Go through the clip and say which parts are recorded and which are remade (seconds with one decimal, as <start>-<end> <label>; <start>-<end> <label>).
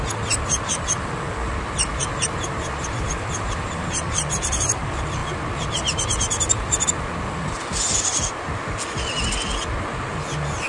0.0-1.9 recorded; 1.9-3.7 remade; 3.7-10.7 recorded